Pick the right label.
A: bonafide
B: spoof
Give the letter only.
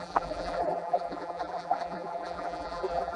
B